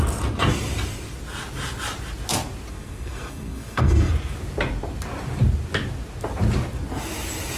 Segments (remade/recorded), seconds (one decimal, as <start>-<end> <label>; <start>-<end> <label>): 0.0-2.7 recorded; 2.7-4.1 remade; 4.1-7.6 recorded